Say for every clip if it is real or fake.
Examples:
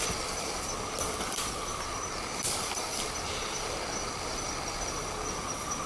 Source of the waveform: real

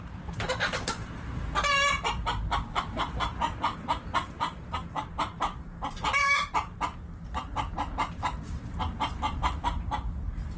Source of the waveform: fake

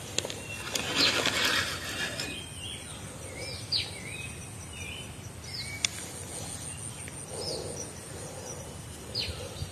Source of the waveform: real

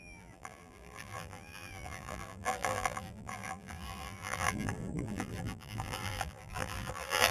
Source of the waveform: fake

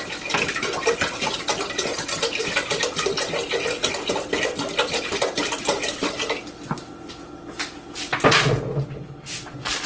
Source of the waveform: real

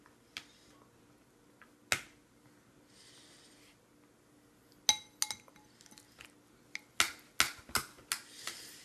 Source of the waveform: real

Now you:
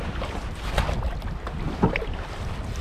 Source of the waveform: real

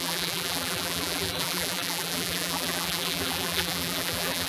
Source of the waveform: fake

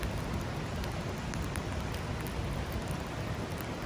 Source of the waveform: real